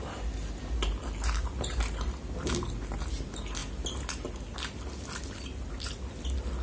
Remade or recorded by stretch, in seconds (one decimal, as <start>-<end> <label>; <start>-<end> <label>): 0.0-6.6 recorded